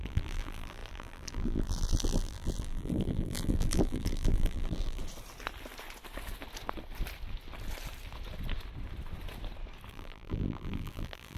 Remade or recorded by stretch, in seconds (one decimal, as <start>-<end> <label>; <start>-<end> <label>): 0.0-5.0 remade; 5.0-9.9 recorded; 9.9-11.4 remade